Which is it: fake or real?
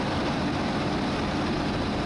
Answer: real